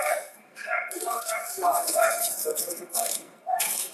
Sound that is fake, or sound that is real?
fake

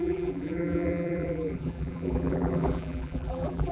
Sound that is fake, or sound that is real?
fake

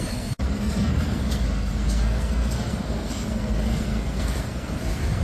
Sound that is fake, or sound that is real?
fake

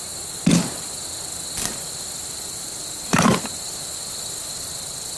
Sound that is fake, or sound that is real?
real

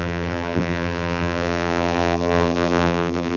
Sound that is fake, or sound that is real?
fake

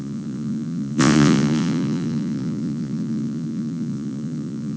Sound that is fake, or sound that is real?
fake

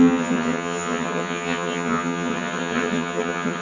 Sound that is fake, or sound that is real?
fake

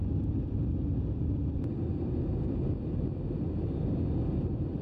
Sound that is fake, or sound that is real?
fake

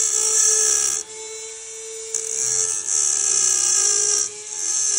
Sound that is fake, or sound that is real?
real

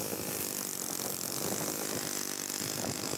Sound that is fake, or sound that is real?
real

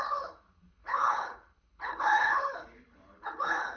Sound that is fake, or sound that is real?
fake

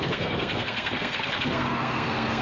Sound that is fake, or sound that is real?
fake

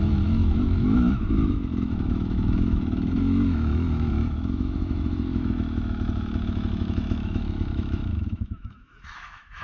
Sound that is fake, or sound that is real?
fake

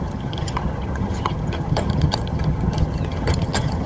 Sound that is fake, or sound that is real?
fake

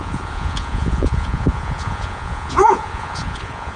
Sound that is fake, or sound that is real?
fake